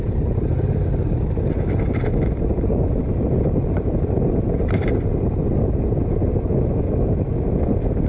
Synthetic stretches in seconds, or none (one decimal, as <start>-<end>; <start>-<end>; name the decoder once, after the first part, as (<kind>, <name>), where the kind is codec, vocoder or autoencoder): 3.0-5.4 (vocoder, BigVGAN v2)